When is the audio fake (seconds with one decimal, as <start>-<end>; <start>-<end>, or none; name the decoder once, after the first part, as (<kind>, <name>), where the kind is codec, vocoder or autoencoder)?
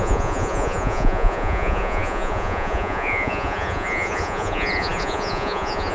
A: 0.0-5.9 (vocoder, Vocos)